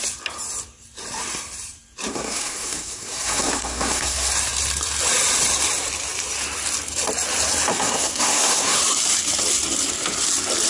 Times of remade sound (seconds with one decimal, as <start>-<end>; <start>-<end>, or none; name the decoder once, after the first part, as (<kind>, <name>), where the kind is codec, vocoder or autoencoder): 2.1-4.3 (codec, SNAC); 7.7-8.8